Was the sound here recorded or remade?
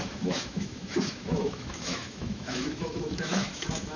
remade